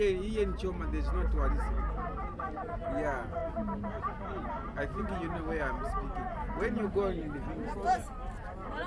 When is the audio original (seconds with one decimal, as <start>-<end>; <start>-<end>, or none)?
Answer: 0.0-8.9